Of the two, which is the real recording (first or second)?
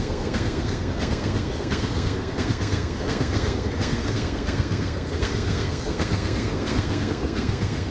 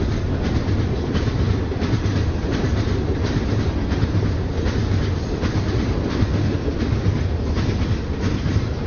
second